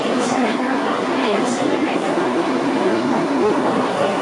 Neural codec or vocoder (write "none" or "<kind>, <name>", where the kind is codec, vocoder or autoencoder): codec, SNAC